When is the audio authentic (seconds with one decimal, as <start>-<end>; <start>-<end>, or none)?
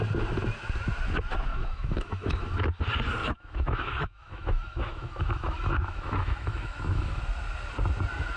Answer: 0.0-1.5; 2.8-3.2; 7.2-8.4